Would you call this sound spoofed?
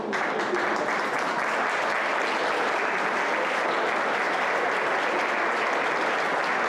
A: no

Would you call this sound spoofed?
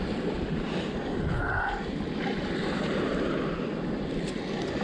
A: no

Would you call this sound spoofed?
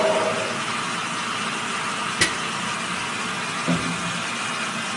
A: no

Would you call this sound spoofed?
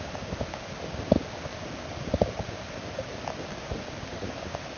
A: no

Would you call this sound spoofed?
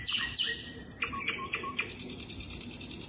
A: yes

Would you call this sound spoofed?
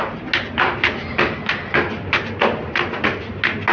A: no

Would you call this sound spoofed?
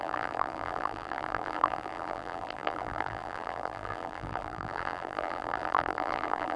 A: yes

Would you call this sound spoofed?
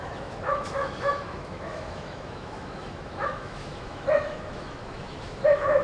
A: yes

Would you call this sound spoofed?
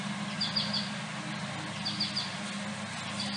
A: no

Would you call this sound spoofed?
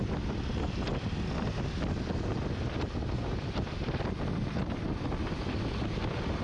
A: no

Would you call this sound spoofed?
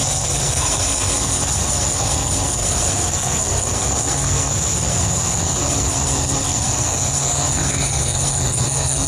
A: yes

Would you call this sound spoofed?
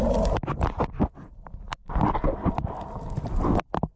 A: no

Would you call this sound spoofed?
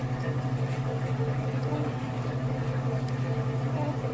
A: no